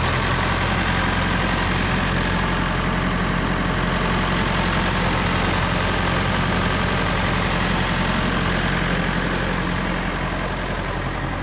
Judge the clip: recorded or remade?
recorded